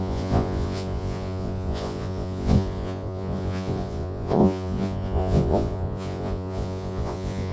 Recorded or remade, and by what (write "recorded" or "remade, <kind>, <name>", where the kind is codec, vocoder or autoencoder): remade, vocoder, Vocos